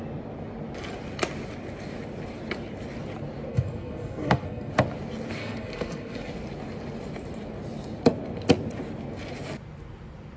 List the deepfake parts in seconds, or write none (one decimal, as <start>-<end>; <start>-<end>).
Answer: 3.5-4.7; 5.4-6.3